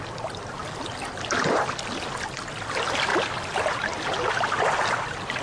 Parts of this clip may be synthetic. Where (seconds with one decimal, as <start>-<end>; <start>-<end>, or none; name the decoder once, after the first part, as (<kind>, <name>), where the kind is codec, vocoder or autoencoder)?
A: none